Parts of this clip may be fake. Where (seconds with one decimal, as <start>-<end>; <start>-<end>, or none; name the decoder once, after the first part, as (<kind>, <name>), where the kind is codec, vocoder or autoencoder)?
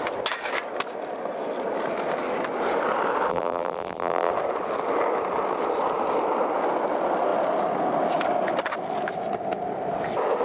3.3-4.3 (vocoder, BigVGAN v2)